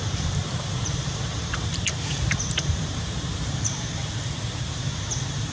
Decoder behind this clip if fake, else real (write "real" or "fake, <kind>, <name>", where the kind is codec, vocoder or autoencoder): fake, vocoder, BigVGAN v2